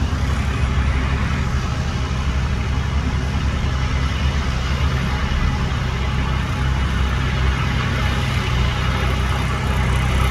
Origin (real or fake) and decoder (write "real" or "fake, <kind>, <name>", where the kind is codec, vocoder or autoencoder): real